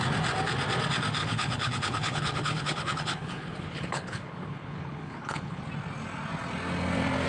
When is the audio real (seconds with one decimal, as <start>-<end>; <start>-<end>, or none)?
0.0-1.2; 5.6-7.3